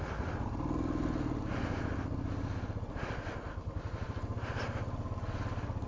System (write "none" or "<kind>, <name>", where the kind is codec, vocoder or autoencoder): none